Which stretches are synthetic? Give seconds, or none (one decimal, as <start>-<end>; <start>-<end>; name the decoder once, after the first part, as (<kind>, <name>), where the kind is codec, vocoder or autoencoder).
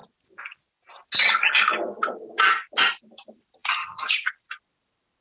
3.1-5.2 (vocoder, BigVGAN v2)